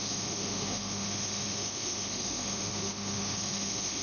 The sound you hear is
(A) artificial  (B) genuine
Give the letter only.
A